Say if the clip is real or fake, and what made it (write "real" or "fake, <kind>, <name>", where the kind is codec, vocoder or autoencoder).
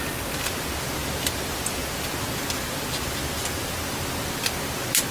real